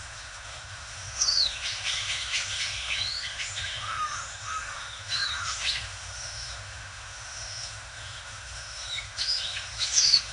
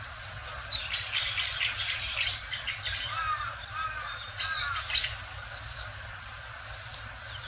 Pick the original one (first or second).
second